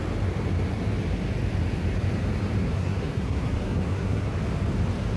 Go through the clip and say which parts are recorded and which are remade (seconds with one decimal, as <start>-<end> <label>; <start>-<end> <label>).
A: 0.0-2.6 recorded; 2.6-4.3 remade; 4.3-5.2 recorded